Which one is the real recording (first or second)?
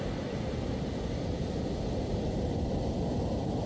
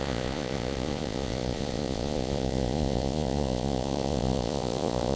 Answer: first